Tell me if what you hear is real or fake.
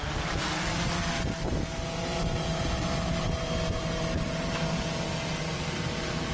real